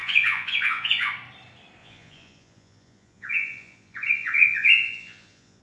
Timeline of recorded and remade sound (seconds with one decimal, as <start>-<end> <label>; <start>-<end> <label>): 0.0-1.1 remade; 1.1-1.8 recorded; 1.8-5.6 remade